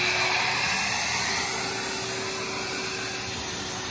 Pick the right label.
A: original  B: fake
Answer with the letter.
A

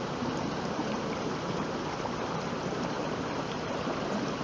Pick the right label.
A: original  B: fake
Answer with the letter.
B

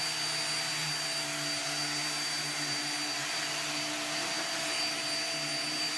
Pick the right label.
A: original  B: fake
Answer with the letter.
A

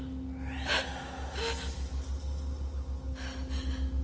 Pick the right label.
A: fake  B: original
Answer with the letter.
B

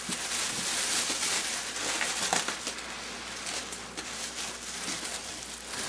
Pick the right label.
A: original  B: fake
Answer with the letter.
A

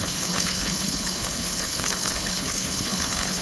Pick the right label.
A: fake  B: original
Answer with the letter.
A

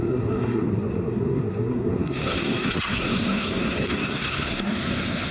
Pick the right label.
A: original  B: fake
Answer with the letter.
B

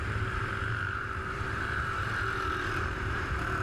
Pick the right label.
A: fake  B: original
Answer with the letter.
A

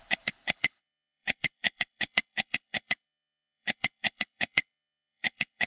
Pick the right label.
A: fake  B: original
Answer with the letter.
A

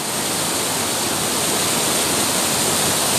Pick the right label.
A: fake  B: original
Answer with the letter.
B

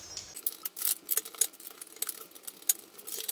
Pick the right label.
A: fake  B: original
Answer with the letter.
B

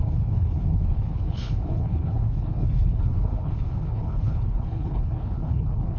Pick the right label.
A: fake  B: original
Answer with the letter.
A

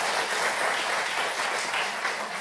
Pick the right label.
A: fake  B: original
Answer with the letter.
B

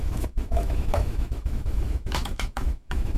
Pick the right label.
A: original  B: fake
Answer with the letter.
B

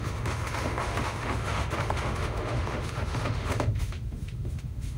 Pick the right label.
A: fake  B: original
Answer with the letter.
A